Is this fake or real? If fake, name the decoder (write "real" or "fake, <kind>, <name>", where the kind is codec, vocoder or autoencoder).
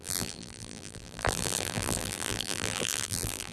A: fake, vocoder, BigVGAN v2